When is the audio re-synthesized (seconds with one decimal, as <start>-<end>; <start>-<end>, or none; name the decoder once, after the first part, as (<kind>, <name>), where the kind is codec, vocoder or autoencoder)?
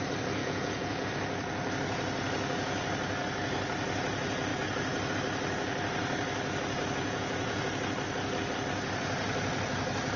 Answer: 0.4-1.1 (vocoder, Vocos); 7.0-7.7